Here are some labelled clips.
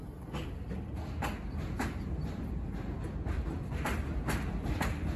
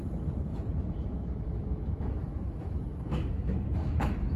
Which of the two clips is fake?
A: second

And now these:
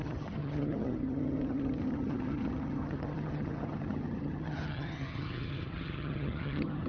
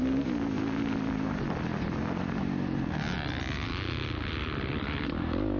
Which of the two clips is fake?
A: first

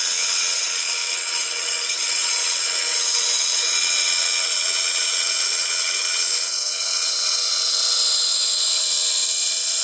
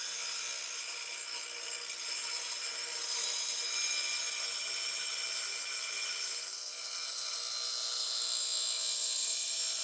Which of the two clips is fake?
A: first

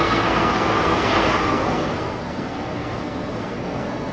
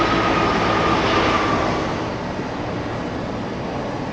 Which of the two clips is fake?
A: first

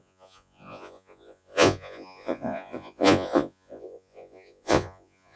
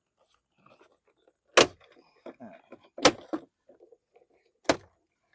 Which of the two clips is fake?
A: first